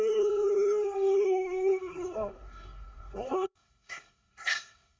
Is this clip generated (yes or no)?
yes